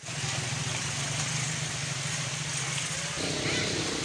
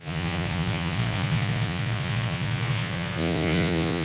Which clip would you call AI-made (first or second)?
second